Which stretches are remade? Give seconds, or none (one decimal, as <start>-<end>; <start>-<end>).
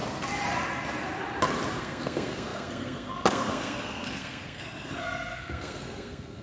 1.8-6.4